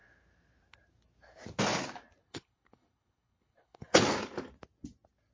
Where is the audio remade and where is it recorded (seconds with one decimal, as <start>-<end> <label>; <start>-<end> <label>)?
0.0-2.2 recorded; 2.2-4.0 remade; 4.0-5.3 recorded